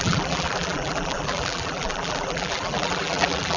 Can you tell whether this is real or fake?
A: fake